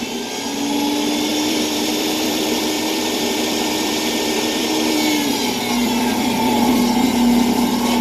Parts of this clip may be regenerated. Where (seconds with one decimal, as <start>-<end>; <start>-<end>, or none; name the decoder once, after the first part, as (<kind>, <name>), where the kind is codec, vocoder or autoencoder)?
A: 1.3-5.1 (vocoder, BigVGAN v2); 5.8-6.8